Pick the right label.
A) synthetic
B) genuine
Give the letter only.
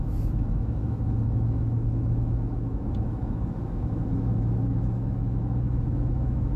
A